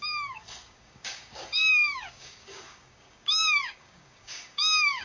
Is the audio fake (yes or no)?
yes